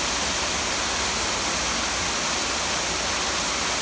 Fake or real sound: real